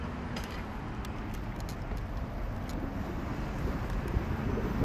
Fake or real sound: real